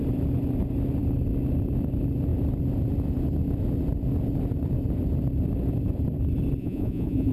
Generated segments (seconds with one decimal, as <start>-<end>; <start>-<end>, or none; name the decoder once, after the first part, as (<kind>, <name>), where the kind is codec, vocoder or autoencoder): 6.6-7.3 (vocoder, Vocos)